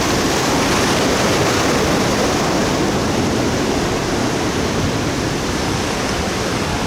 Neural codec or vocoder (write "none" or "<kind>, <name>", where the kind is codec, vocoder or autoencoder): none